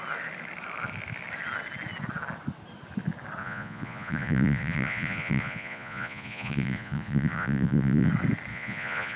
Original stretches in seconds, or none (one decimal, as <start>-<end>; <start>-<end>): 0.0-3.4; 8.1-8.5